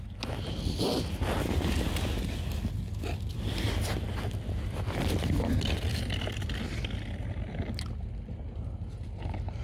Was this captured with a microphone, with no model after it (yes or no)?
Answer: yes